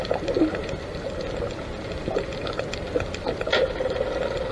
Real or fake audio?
real